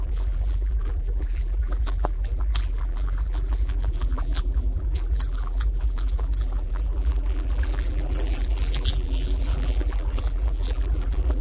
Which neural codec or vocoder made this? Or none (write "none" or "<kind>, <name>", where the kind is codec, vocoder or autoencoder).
vocoder, BigVGAN v2